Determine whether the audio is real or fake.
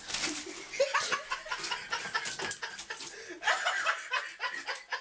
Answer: real